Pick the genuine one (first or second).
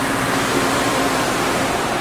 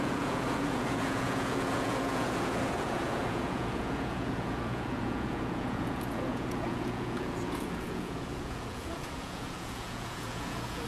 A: first